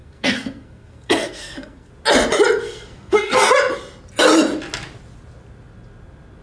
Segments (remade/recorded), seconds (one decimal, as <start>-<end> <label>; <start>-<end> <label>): 0.0-1.9 remade; 1.9-2.6 recorded; 2.6-3.5 remade; 3.5-6.4 recorded